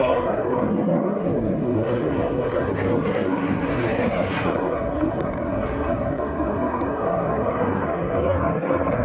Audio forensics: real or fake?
fake